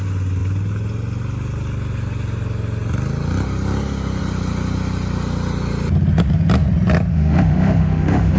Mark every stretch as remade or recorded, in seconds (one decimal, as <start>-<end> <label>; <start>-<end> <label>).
0.0-7.1 recorded; 7.1-8.4 remade